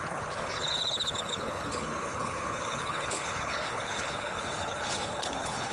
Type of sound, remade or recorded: remade